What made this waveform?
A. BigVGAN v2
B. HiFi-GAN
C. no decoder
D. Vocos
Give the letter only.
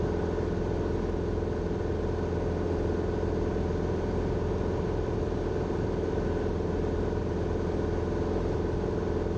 C